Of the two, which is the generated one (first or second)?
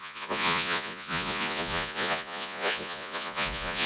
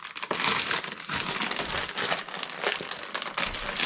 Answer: first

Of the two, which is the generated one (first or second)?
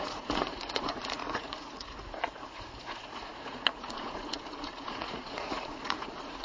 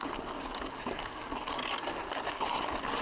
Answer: first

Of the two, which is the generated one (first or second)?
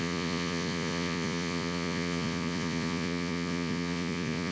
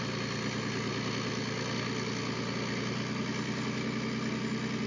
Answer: first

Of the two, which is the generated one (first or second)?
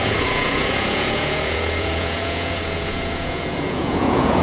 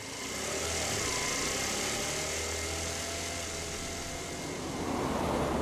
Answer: first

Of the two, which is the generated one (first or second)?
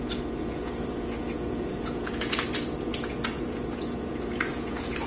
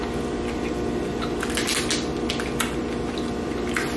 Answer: first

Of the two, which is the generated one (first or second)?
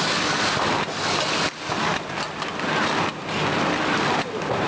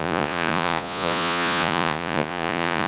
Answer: second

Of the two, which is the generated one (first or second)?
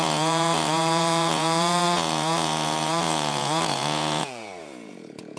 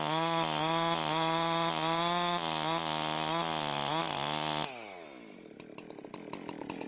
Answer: first